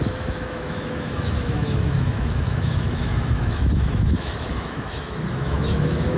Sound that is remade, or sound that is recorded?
remade